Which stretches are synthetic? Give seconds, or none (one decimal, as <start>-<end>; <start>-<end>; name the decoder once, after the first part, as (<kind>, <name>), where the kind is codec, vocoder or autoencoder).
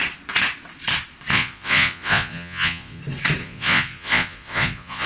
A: 1.3-3.0 (vocoder, Vocos); 3.4-5.1